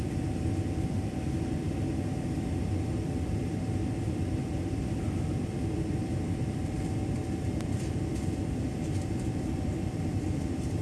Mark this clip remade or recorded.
remade